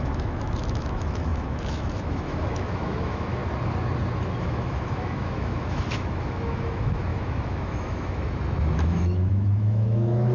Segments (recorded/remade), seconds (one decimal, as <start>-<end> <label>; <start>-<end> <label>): 0.0-3.4 remade; 3.4-4.4 recorded; 4.4-10.3 remade